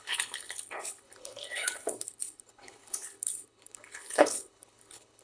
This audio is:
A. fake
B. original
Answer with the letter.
A